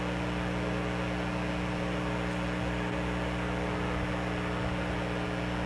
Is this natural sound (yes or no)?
yes